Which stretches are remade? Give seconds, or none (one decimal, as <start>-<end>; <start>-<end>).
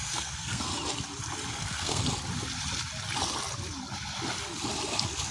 0.0-0.7; 1.5-2.0